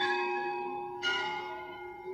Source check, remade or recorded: remade